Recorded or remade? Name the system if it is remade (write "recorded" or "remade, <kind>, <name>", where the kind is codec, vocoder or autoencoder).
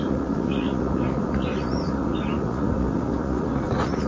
remade, vocoder, Vocos